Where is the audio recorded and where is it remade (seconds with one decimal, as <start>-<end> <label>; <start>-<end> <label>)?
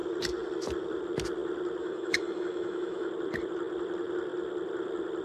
0.0-1.8 recorded; 1.8-3.1 remade; 3.1-5.2 recorded